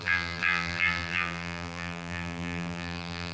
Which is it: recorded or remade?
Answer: remade